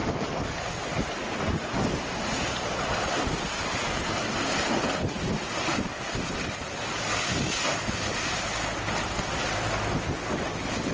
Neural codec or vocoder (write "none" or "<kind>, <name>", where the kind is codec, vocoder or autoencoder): none